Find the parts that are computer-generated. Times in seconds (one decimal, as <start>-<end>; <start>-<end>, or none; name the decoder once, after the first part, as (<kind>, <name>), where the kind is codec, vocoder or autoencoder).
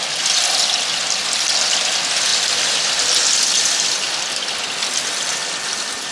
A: none